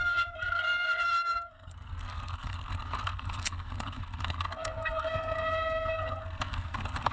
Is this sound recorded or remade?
remade